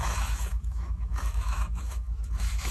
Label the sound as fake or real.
fake